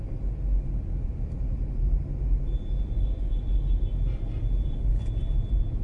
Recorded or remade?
recorded